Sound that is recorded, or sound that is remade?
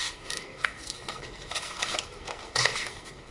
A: remade